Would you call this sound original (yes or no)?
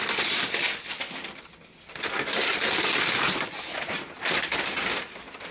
yes